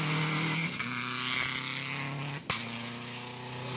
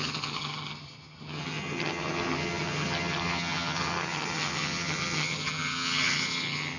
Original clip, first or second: first